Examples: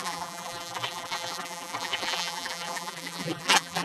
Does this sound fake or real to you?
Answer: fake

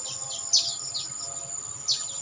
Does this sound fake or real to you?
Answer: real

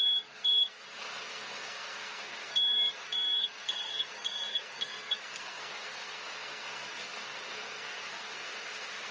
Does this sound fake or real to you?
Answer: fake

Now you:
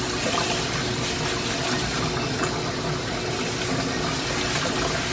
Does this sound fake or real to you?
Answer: real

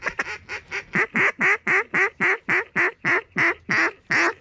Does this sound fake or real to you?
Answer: real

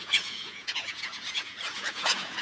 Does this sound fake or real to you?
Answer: fake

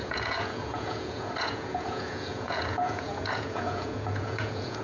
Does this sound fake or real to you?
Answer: fake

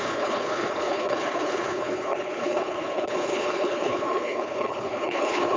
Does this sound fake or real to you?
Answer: fake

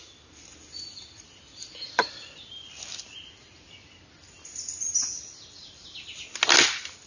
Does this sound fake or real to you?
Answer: real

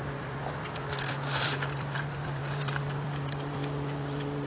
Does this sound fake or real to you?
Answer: real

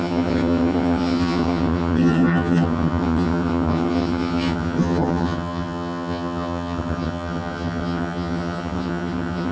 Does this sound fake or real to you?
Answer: fake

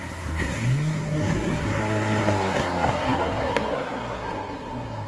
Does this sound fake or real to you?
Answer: fake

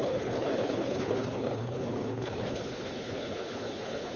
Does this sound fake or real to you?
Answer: fake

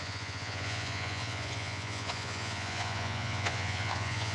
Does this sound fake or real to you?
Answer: fake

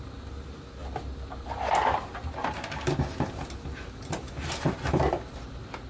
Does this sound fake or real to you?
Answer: real